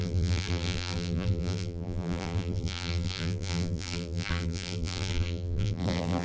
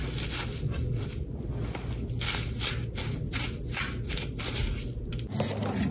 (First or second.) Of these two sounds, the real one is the second